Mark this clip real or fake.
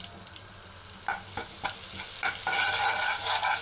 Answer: real